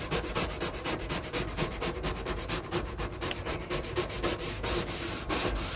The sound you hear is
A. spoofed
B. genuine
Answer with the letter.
A